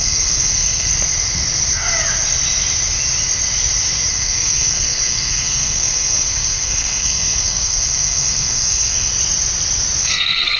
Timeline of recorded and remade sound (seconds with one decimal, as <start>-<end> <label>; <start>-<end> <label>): 0.0-0.9 remade; 0.9-4.1 recorded; 4.1-9.1 remade; 9.1-10.0 recorded; 10.0-10.6 remade